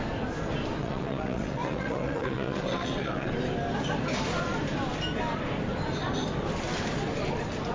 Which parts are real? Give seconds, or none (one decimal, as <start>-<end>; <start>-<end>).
0.0-0.8; 3.3-7.7